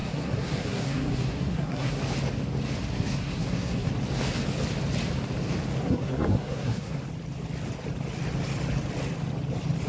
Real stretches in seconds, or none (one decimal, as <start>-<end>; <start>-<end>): 2.0-2.9; 3.9-5.8; 7.0-9.9